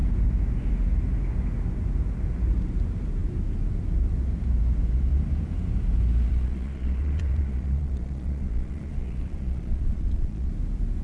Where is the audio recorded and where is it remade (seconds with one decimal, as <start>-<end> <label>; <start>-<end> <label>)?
0.0-6.3 recorded; 6.3-10.5 remade; 10.5-11.0 recorded